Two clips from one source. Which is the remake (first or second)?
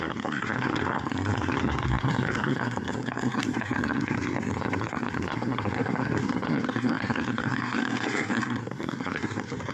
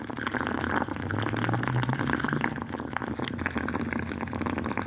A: first